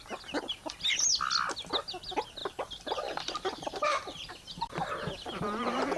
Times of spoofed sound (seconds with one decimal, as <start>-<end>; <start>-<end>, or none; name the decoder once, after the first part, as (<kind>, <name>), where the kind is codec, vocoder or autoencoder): 2.4-6.0 (vocoder, BigVGAN v2)